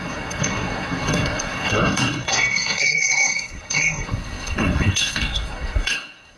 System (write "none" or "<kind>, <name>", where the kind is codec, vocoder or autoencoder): codec, SNAC